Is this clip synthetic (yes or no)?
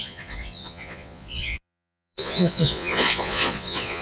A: yes